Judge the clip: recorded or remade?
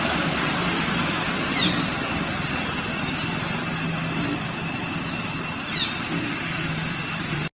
recorded